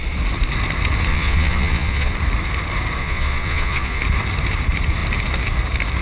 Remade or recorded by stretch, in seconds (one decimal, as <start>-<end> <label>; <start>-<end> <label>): 0.0-1.1 recorded; 1.1-2.1 remade; 2.1-3.0 recorded; 3.0-4.0 remade; 4.0-6.0 recorded